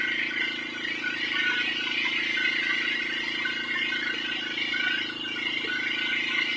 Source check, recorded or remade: recorded